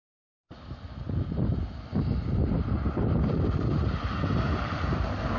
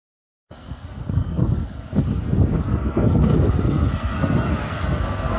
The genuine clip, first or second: first